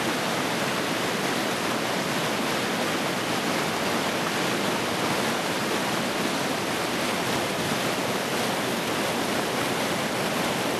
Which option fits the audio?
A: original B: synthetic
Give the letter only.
A